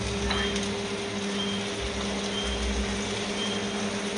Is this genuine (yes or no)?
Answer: yes